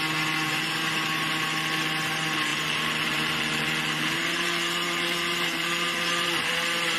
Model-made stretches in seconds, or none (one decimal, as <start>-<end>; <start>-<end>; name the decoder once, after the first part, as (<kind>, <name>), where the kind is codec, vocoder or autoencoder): 2.5-6.5 (vocoder, BigVGAN v2)